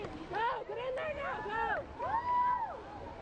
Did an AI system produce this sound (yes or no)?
no